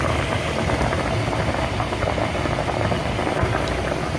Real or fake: fake